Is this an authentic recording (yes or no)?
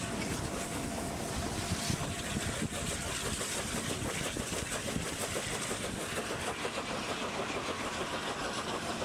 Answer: yes